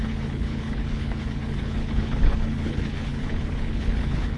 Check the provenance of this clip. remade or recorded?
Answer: remade